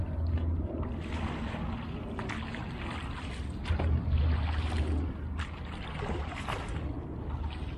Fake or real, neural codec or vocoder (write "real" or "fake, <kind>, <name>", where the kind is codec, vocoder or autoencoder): real